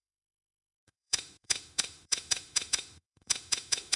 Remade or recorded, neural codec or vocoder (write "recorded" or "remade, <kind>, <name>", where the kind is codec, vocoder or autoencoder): remade, autoencoder, DAC-VAE